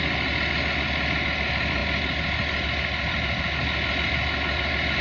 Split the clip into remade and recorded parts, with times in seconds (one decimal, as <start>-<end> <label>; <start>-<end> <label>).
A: 0.0-5.0 recorded